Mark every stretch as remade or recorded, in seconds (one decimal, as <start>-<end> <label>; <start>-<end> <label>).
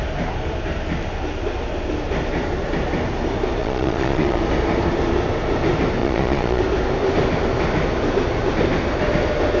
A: 0.0-3.6 recorded; 3.6-4.4 remade; 4.4-6.0 recorded; 6.0-6.6 remade; 6.6-9.6 recorded